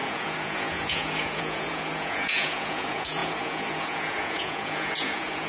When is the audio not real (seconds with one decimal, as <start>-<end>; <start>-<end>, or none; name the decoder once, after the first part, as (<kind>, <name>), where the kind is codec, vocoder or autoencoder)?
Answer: 0.0-5.5 (vocoder, Vocos)